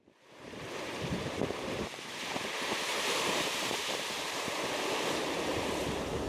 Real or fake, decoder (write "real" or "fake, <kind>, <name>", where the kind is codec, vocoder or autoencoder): fake, vocoder, BigVGAN v2